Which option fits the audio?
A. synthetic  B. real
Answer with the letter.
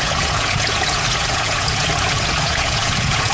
A